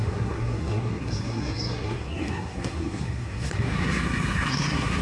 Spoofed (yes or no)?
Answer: yes